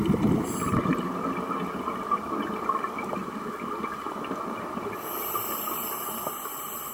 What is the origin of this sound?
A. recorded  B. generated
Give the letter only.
A